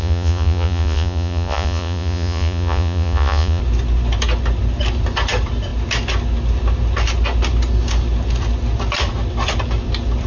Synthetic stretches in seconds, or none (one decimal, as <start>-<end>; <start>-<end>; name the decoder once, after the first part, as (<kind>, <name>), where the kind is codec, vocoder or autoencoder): 0.0-3.6 (vocoder, Vocos)